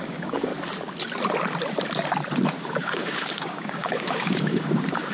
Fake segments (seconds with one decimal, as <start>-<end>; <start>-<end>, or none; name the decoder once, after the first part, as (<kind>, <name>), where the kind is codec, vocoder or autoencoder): 0.0-0.5 (codec, DAC); 2.5-5.1